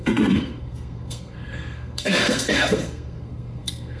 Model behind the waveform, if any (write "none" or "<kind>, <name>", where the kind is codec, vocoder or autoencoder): codec, SNAC